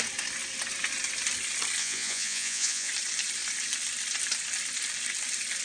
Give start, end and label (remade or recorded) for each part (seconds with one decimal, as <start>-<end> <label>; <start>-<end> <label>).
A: 0.0-1.8 recorded; 1.8-2.9 remade; 2.9-5.6 recorded